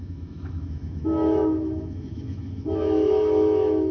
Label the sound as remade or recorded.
remade